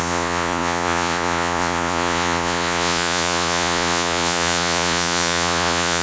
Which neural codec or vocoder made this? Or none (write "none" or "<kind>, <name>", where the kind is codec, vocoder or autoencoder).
vocoder, Vocos